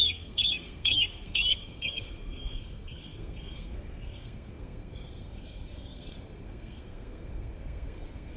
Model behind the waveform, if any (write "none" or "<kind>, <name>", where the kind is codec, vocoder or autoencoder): codec, SNAC